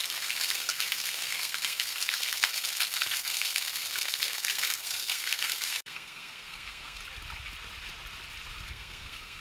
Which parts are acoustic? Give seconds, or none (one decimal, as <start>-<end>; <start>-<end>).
7.0-8.7